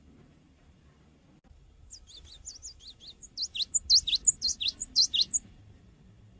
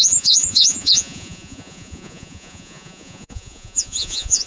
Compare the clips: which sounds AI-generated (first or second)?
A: second